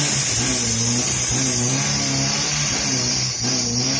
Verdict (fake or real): real